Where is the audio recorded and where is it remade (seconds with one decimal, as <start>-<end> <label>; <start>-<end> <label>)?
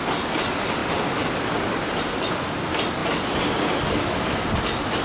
0.0-5.0 recorded